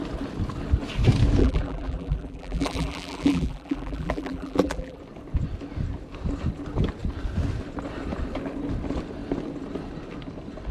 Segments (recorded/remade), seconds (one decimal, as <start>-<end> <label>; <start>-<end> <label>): 0.0-1.4 recorded; 1.4-5.0 remade; 5.0-10.7 recorded